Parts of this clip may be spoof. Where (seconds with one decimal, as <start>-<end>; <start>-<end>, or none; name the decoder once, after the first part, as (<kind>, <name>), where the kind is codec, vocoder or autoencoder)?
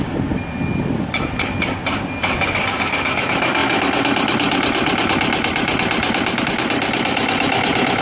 none